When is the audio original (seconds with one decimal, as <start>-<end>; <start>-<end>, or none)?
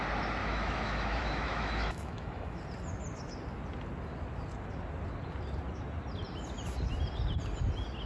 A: 0.0-0.4; 2.6-8.1